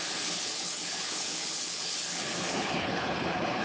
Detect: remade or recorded remade